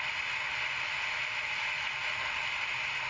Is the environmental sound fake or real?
real